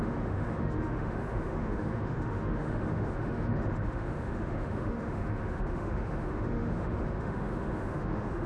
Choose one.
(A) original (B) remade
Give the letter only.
B